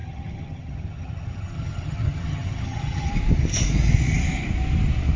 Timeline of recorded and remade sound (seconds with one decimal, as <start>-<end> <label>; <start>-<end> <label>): 0.0-3.1 remade; 3.1-5.2 recorded